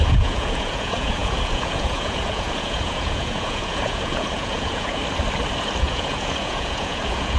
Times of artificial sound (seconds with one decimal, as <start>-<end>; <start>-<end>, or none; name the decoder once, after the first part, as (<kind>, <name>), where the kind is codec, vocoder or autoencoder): 0.0-5.0 (vocoder, Vocos); 5.8-7.4